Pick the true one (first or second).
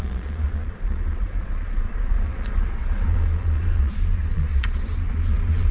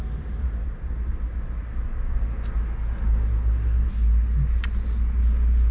second